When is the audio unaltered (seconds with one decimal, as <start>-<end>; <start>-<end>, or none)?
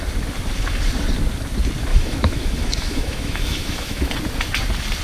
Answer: 0.0-1.9; 4.1-5.0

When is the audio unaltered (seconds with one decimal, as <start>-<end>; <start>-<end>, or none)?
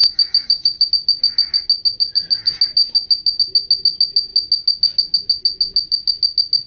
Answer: 0.9-6.7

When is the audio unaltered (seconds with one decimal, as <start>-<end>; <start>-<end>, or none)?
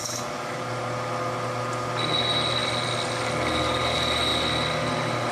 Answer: 0.6-5.3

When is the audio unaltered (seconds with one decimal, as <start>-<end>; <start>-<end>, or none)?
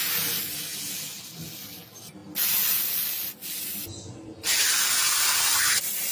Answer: 0.0-6.1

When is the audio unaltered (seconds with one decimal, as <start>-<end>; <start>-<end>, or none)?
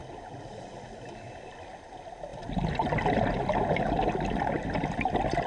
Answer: 0.0-5.5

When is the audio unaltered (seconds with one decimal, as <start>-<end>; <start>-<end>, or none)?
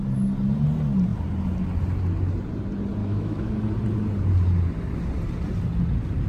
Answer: 0.0-3.0; 3.5-6.3